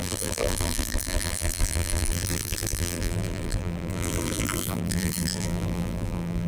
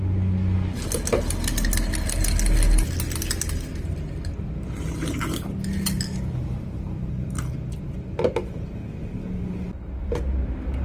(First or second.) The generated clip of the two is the first